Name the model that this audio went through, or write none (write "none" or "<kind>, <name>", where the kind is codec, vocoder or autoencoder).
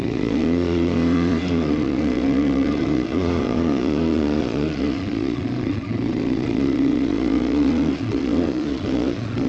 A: vocoder, Vocos